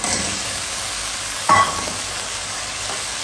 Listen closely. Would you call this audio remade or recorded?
remade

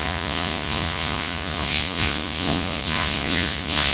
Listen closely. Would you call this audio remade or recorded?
remade